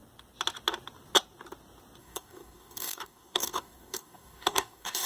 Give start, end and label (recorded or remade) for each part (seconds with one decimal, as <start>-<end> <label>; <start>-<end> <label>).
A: 0.0-2.0 recorded; 2.0-5.1 remade